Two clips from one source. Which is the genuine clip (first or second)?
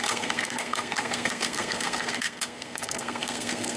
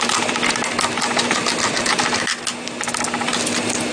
second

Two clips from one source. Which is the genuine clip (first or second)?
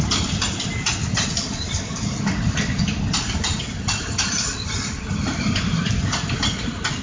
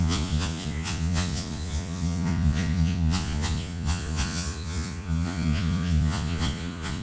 first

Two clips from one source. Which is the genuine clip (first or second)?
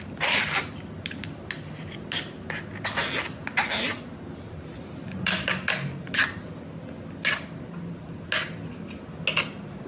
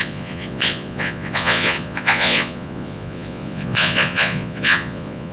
first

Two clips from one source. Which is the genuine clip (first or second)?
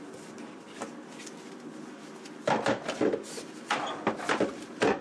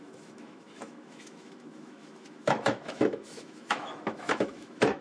first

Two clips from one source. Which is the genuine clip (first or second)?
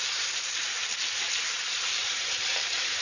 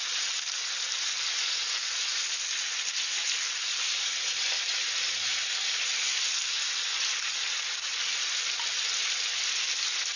second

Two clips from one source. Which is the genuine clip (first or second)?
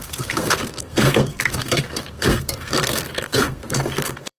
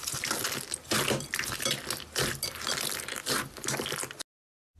second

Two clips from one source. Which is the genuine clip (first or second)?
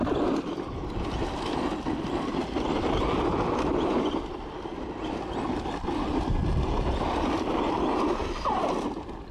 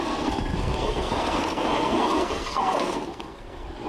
first